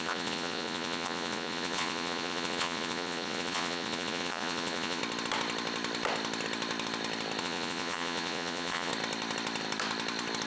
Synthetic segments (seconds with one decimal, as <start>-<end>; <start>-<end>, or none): 0.0-5.0; 7.4-8.9